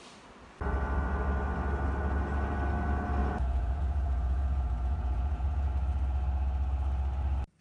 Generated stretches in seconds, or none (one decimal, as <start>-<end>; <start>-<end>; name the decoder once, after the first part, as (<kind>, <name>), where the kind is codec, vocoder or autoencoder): 3.2-5.7 (vocoder, Vocos)